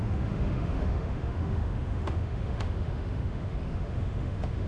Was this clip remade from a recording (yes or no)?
yes